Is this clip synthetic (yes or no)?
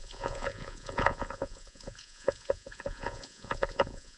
yes